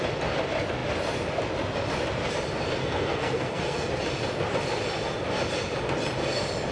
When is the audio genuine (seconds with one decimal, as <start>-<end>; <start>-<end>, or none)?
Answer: 0.0-2.8; 3.9-6.7

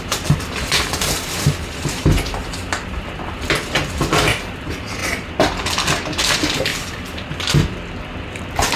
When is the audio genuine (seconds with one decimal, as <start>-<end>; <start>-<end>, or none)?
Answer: 0.0-8.8

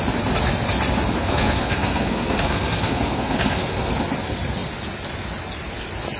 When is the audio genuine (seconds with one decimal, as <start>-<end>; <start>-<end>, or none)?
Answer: 0.0-1.2; 3.9-6.2

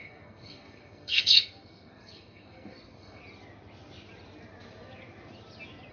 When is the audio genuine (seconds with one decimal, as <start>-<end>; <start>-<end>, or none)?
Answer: 3.2-5.9

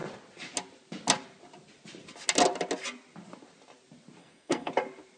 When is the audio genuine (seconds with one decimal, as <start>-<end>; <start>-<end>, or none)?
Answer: 0.0-4.2; 4.7-5.2

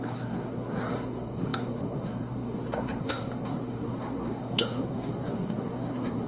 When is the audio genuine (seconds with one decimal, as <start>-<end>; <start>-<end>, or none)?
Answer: none

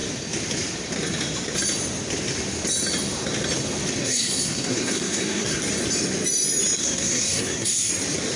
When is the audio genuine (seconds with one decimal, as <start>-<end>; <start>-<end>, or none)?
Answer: 0.0-4.0; 5.6-6.8; 7.9-8.4